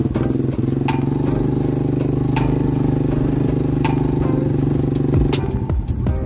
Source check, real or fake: real